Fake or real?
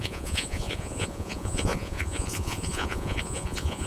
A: fake